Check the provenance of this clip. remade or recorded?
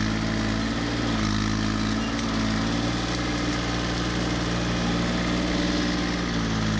recorded